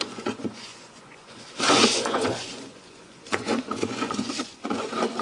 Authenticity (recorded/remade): remade